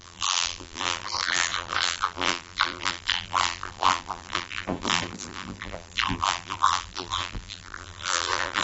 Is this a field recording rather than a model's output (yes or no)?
no